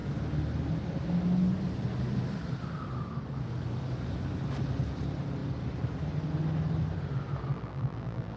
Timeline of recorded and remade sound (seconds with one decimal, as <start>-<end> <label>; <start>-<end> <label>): 0.0-7.5 recorded; 7.5-8.4 remade